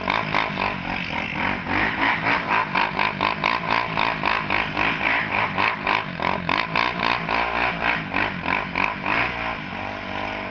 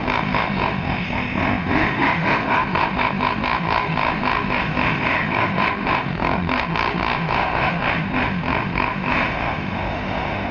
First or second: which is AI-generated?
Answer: second